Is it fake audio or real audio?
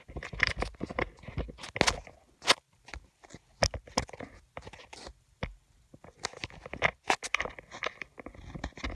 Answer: real